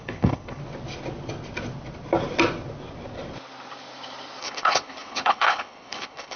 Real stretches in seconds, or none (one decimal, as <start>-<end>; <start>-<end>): 0.6-4.4